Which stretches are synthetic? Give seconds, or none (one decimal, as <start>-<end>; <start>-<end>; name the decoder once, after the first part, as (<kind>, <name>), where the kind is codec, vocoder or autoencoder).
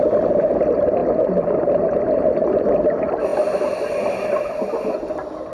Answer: none